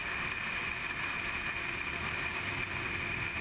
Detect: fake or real real